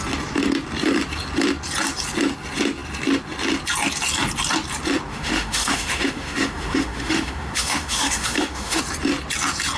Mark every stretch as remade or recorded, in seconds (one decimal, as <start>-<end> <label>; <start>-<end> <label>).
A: 0.0-5.1 recorded; 5.1-8.8 remade; 8.8-9.8 recorded